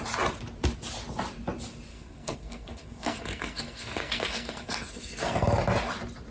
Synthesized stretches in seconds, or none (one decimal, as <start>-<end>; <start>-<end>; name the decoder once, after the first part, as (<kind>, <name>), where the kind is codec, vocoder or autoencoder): 1.9-5.6 (codec, SNAC)